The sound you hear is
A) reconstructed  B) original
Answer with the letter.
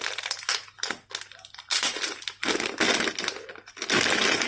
B